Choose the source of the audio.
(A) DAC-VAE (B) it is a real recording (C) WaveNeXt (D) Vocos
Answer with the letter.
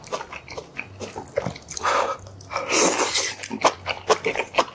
B